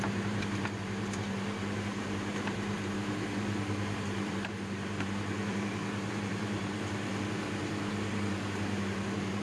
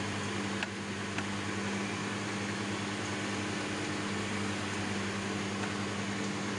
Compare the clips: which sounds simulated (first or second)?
first